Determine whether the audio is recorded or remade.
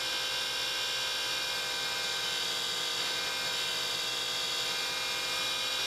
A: recorded